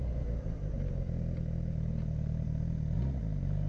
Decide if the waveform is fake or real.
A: real